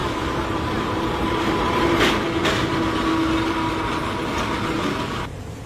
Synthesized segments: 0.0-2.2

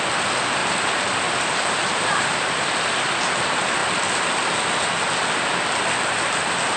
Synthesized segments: 0.6-2.5

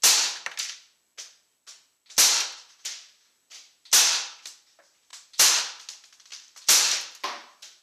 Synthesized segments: 5.1-5.6; 6.3-7.8

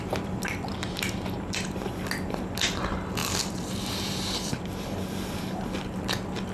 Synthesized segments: 0.7-1.9; 3.2-5.6

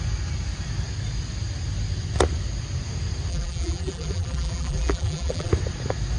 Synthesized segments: 3.3-5.5

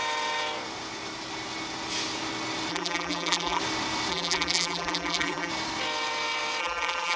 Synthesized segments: 2.7-3.6; 4.1-5.5; 6.6-7.2

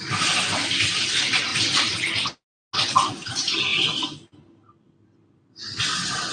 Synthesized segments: none

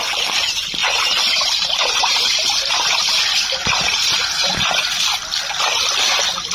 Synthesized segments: 0.8-3.0; 3.6-4.5